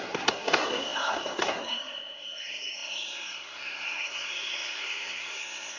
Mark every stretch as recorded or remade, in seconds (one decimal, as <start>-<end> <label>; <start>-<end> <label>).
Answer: 0.0-5.8 remade